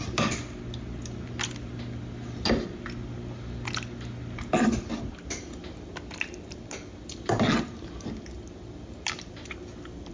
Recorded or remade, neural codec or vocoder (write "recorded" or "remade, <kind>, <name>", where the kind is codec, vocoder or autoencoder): recorded